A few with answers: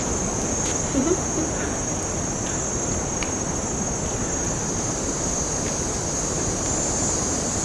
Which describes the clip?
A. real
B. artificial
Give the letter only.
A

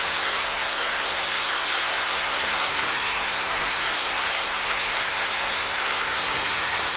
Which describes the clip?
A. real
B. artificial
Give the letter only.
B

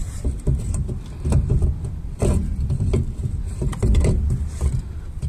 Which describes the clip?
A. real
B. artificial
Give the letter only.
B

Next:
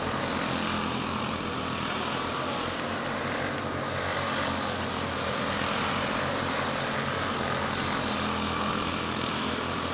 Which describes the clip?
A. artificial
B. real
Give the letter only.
B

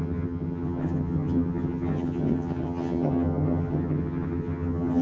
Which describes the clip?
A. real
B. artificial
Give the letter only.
B